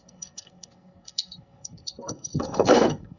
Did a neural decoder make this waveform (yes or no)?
yes